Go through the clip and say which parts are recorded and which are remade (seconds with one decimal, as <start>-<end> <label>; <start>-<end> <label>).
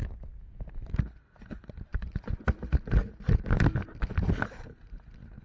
0.0-1.4 recorded; 1.4-3.0 remade; 3.0-4.1 recorded; 4.1-5.4 remade